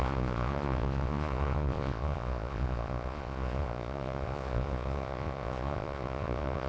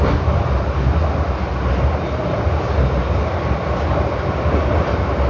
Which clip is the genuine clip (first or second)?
second